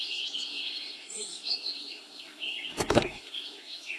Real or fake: fake